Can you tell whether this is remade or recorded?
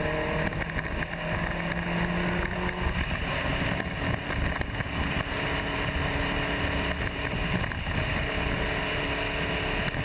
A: recorded